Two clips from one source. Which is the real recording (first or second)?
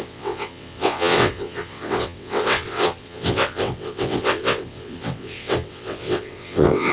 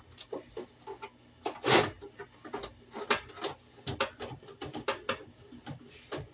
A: second